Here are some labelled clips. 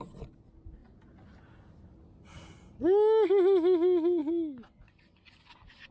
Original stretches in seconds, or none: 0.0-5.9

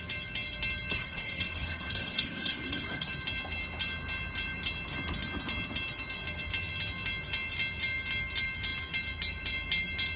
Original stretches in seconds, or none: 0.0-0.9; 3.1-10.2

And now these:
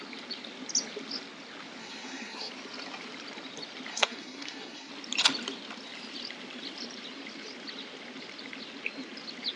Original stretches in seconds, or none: 0.0-1.8; 2.5-3.9; 4.9-9.6

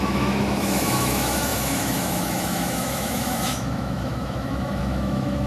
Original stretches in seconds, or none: none

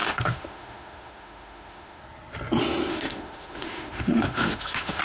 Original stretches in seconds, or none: 2.0-2.9

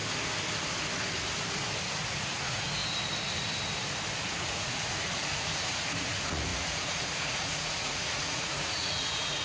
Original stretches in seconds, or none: 0.0-2.1; 2.8-4.3

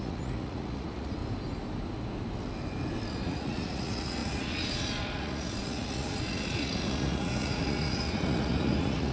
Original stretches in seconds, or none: 1.2-3.1